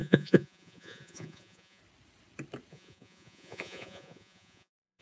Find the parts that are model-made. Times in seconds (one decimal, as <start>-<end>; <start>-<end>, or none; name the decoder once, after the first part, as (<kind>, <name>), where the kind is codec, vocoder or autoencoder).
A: 0.0-1.8 (vocoder, Vocos); 2.7-5.0